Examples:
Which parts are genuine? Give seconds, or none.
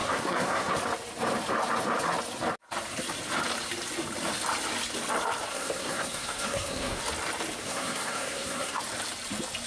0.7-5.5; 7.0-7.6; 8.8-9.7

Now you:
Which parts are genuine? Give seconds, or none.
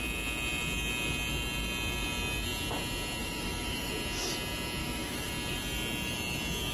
0.0-3.2; 3.9-4.8; 5.3-6.7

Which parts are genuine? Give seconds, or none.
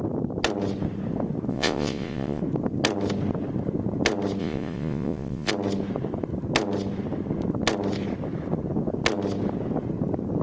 0.0-1.5; 2.4-4.4; 5.5-10.4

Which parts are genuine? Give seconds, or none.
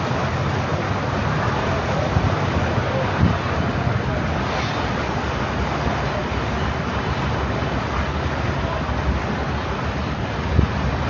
0.0-0.7; 3.1-11.1